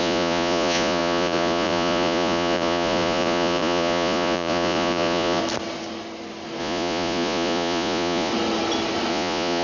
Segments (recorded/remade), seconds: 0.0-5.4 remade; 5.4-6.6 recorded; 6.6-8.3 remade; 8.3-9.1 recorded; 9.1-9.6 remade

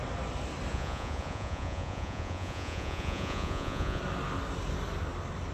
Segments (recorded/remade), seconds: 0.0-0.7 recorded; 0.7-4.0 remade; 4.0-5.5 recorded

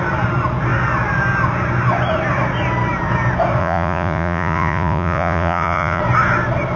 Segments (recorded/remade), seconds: 0.0-3.6 recorded; 3.6-6.0 remade; 6.0-6.8 recorded

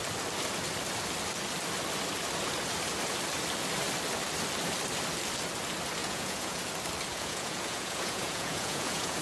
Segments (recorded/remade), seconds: 0.0-6.0 recorded; 6.0-6.6 remade; 6.6-7.1 recorded; 7.1-9.2 remade

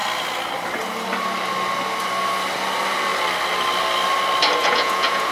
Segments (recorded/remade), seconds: 0.0-4.6 recorded; 4.6-5.3 remade

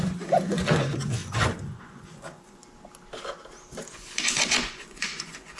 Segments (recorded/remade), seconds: 0.0-2.6 remade; 2.6-3.9 recorded; 3.9-5.6 remade

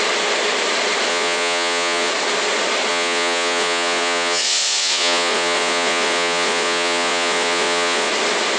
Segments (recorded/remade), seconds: 0.0-1.1 recorded; 1.1-2.1 remade; 2.1-2.9 recorded; 2.9-8.1 remade; 8.1-8.6 recorded

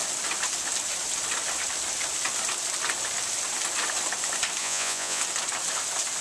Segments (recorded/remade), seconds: 0.0-4.6 recorded; 4.6-5.2 remade; 5.2-6.2 recorded